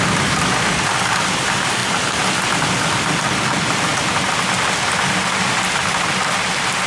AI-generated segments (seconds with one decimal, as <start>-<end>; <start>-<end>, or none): none